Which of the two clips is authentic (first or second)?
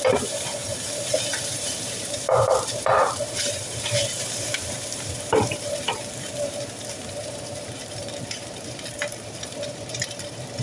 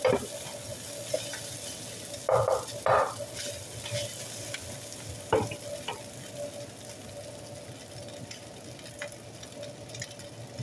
second